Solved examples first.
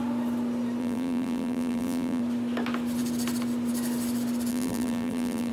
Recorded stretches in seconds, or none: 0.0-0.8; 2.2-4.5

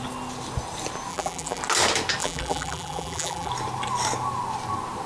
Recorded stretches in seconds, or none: 0.0-1.1; 1.6-2.2; 3.5-5.1

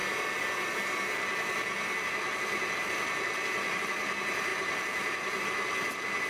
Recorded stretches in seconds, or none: 0.0-6.3

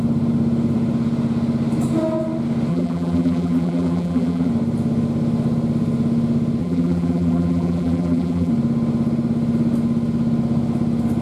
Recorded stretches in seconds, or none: 0.0-2.7; 4.5-6.6; 8.5-11.2